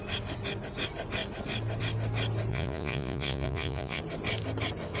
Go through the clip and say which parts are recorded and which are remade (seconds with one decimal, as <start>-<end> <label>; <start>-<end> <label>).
0.0-2.5 recorded; 2.5-4.0 remade; 4.0-5.0 recorded